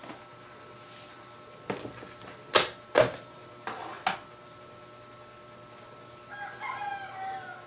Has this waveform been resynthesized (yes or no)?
no